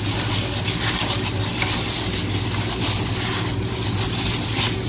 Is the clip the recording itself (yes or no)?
yes